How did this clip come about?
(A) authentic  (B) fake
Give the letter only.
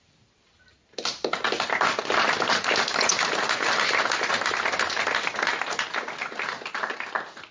A